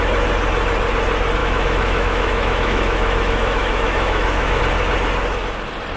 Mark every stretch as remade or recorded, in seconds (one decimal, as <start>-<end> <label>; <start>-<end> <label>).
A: 0.0-1.4 recorded; 1.4-4.6 remade; 4.6-6.0 recorded